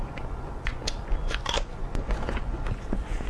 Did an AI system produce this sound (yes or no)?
yes